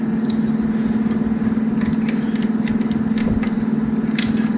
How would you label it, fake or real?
real